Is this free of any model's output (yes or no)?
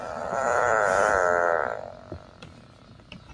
yes